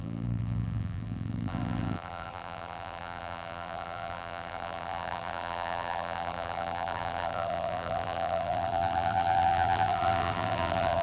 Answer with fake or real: fake